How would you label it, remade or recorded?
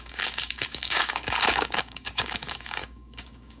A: remade